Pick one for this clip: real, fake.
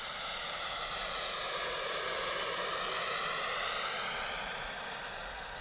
real